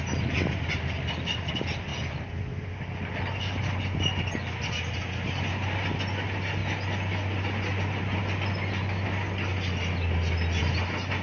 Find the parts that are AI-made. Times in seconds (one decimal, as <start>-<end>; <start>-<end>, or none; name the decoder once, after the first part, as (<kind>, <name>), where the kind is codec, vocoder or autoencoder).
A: none